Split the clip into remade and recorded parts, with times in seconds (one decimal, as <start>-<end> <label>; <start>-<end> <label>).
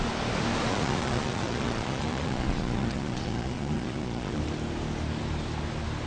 0.0-0.7 recorded; 0.7-4.4 remade; 4.4-6.1 recorded